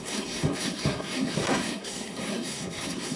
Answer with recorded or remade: remade